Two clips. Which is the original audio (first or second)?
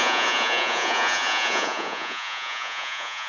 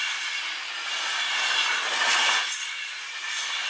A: second